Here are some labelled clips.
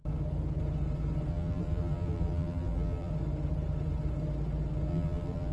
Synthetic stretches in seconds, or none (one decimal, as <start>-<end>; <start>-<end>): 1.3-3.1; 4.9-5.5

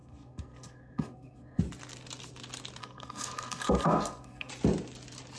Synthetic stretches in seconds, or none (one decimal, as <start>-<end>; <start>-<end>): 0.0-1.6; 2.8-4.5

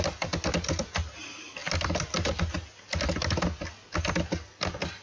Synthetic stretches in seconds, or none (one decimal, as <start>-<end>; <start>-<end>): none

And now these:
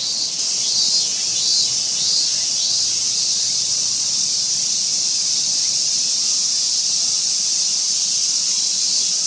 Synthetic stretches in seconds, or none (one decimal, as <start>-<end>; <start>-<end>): none

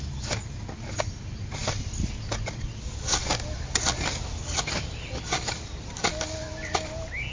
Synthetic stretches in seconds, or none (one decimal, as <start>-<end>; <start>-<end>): none

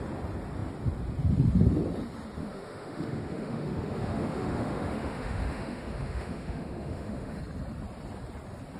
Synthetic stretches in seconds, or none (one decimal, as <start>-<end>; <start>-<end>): 2.4-7.4

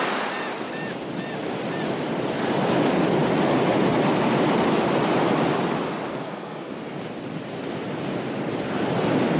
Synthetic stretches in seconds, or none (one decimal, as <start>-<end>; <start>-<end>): 6.1-6.7

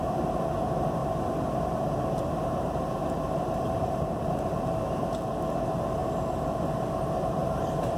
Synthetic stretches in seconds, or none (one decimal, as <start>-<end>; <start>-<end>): 1.0-4.8; 7.4-8.0